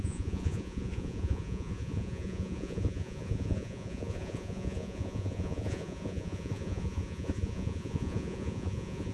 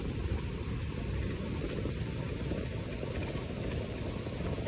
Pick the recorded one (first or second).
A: second